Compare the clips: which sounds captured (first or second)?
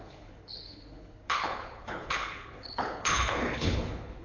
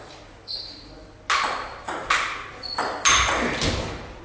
second